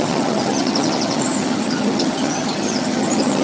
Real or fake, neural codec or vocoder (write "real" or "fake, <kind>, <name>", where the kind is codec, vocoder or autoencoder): fake, vocoder, HiFi-GAN